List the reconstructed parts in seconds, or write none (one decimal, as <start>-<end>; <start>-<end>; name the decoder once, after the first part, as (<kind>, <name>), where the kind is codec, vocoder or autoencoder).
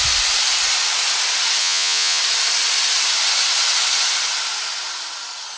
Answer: 1.6-2.2 (vocoder, Vocos)